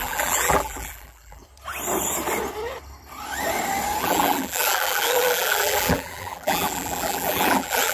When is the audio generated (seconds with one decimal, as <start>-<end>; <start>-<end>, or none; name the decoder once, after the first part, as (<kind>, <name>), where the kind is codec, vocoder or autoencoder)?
0.0-1.4 (vocoder, BigVGAN v2); 4.0-7.9